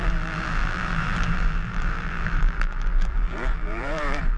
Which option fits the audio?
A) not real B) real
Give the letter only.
A